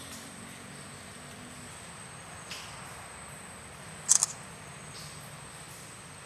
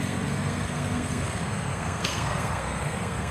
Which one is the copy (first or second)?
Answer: second